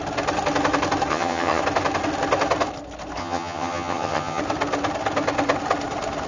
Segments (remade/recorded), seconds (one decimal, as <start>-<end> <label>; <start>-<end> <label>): 0.0-1.1 recorded; 1.1-1.6 remade; 1.6-3.2 recorded; 3.2-4.4 remade; 4.4-6.3 recorded